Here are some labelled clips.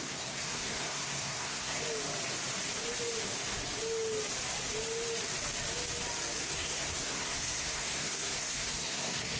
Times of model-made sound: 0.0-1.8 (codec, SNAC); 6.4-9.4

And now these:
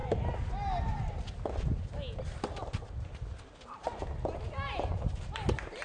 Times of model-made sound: none

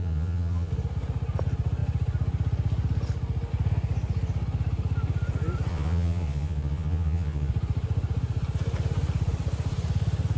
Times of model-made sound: 0.0-0.7 (vocoder, Vocos); 5.7-7.5

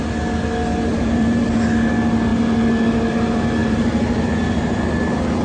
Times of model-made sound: 0.9-1.5 (vocoder, BigVGAN v2); 3.6-4.2

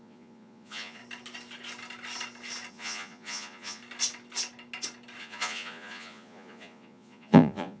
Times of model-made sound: 0.0-1.0 (vocoder, Vocos); 2.7-3.8; 5.2-7.8